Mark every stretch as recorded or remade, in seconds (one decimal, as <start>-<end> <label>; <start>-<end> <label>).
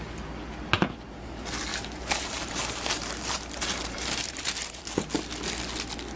0.0-1.7 recorded; 1.7-4.8 remade; 4.8-6.2 recorded